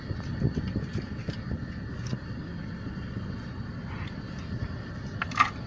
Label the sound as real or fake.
real